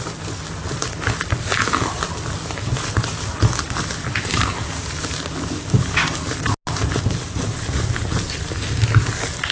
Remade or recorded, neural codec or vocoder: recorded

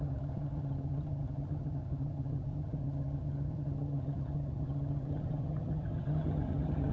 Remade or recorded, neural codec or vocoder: remade, vocoder, HiFi-GAN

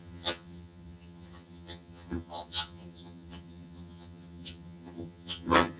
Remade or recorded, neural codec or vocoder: remade, vocoder, HiFi-GAN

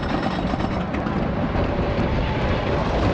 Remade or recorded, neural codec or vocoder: recorded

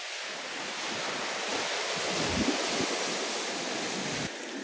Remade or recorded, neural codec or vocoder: recorded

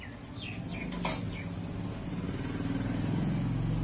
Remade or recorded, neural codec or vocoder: recorded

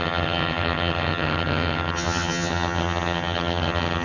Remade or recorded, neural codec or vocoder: remade, vocoder, HiFi-GAN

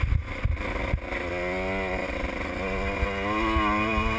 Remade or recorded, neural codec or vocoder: recorded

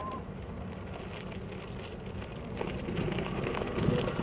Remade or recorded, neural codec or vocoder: recorded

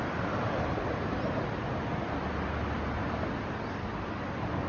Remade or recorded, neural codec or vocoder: recorded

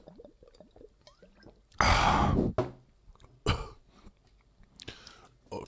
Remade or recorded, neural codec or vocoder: recorded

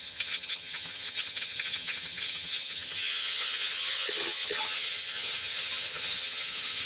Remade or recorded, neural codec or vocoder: remade, vocoder, HiFi-GAN